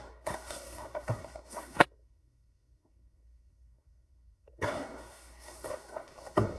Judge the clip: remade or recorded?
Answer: remade